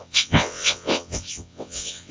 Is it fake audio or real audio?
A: fake